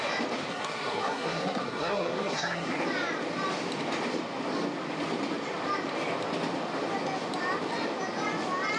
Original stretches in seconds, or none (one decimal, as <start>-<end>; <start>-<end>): 0.0-0.5; 2.8-8.8